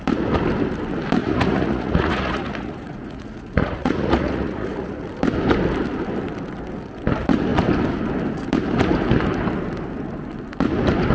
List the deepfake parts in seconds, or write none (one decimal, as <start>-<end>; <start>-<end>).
1.2-5.0